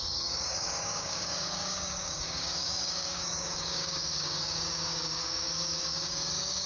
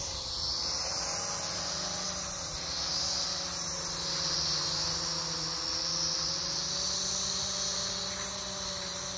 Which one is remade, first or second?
first